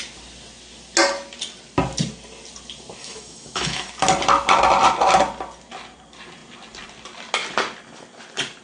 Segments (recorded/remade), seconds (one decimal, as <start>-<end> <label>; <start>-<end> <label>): 0.0-3.0 recorded; 3.0-3.9 remade; 3.9-8.6 recorded